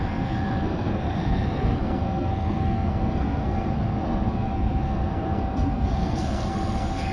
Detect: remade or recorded remade